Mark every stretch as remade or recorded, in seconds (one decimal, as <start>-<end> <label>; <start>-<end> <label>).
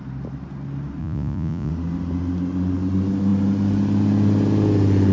0.0-1.0 recorded; 1.0-1.7 remade; 1.7-5.1 recorded